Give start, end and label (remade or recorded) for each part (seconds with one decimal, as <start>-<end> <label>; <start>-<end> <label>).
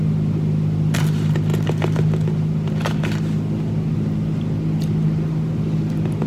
0.0-6.3 recorded